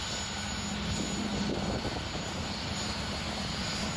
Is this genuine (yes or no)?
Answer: yes